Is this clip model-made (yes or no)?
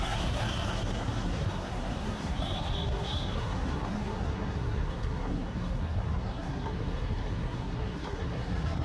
yes